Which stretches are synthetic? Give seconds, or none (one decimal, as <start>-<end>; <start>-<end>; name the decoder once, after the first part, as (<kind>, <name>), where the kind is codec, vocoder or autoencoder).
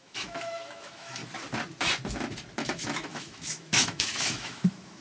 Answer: 0.0-1.2 (autoencoder, DAC-VAE); 2.6-5.0